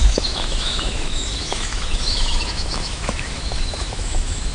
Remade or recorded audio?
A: remade